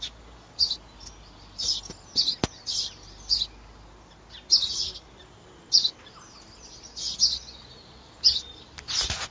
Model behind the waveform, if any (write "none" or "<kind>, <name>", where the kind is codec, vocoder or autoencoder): none